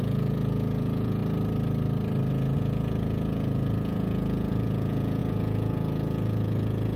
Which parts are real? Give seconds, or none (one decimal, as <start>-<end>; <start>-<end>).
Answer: 1.2-2.3

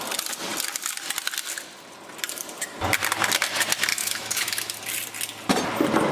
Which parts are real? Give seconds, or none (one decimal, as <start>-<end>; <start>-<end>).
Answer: 0.0-3.9; 4.8-6.1

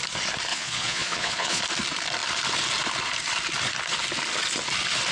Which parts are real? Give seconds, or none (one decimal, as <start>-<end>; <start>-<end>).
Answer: 0.0-0.5; 1.6-5.1

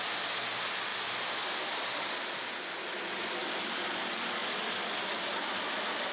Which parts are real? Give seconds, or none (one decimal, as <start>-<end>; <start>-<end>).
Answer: 0.0-6.1

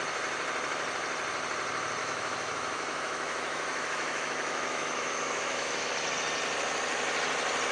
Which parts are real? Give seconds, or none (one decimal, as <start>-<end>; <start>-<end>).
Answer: 0.0-2.0; 5.9-7.7

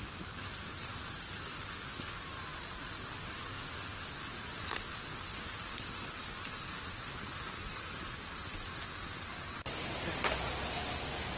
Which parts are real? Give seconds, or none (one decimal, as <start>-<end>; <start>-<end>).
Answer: 0.0-11.4

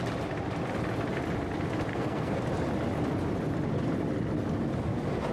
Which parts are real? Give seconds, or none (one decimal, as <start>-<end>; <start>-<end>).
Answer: 0.0-1.9; 2.4-5.3